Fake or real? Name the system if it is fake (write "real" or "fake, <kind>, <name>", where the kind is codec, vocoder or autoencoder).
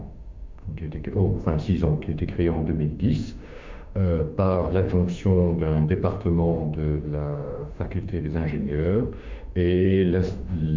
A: fake, autoencoder, DAC-VAE